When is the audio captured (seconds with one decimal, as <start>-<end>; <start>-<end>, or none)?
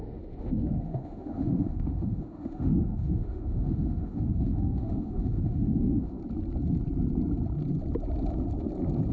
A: 6.2-9.1